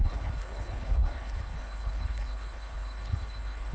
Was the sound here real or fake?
fake